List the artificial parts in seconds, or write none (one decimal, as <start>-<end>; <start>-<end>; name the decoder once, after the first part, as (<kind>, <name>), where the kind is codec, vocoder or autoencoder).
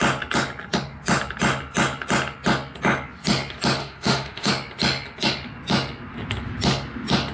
3.8-4.5 (autoencoder, DAC-VAE)